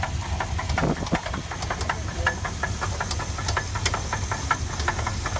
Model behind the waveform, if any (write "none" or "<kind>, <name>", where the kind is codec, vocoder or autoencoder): none